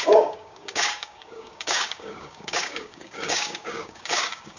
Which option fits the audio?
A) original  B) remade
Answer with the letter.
B